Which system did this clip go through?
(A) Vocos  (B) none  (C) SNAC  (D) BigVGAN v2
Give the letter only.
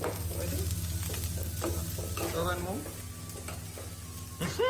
B